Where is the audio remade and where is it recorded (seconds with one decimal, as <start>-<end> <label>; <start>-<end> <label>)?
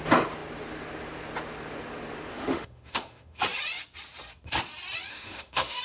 0.0-2.3 recorded; 2.3-3.4 remade; 3.4-5.1 recorded; 5.1-5.8 remade